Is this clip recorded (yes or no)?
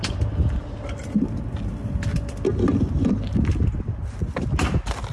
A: yes